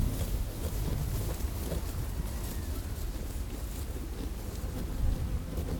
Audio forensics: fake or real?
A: real